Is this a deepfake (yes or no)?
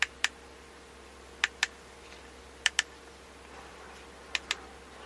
no